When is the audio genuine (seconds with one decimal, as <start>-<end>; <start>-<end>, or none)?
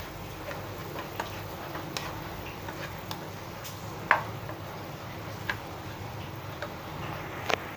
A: 0.0-7.8